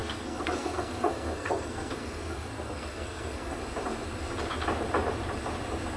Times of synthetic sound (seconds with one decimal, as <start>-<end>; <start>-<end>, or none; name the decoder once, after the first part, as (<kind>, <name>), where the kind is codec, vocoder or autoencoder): 0.0-3.6 (codec, SNAC)

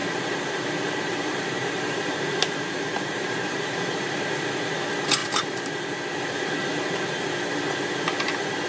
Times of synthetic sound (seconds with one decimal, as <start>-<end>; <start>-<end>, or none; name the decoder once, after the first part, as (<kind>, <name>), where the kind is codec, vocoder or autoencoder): 0.0-4.6 (vocoder, BigVGAN v2); 5.2-5.7

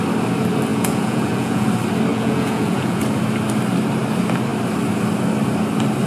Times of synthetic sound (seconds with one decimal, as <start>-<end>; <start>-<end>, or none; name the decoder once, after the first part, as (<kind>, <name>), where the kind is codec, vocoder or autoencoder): 0.7-1.7 (vocoder, Vocos); 2.1-3.0